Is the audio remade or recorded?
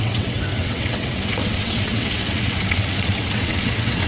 remade